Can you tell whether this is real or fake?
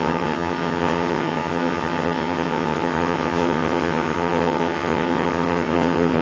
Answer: fake